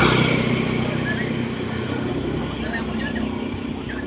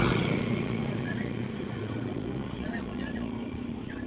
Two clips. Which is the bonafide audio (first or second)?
first